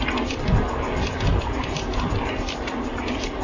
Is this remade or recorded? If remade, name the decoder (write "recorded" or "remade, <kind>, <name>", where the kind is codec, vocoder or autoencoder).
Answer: recorded